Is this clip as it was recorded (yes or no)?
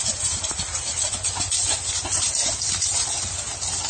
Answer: yes